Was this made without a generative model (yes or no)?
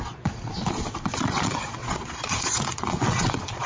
no